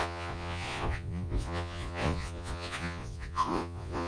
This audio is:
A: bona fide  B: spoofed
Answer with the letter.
B